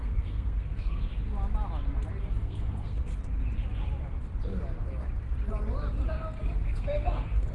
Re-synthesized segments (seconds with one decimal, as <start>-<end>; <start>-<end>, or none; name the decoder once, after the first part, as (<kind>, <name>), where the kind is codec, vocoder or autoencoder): 0.0-1.1 (codec, SNAC); 2.3-3.1; 6.4-7.5